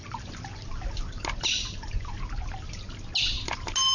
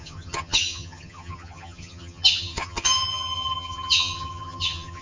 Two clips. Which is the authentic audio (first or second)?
first